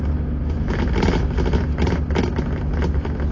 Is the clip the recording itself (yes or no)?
yes